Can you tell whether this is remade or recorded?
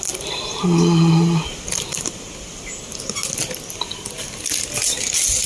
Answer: recorded